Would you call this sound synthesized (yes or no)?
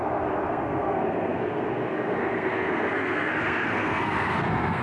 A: yes